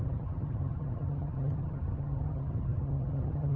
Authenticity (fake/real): fake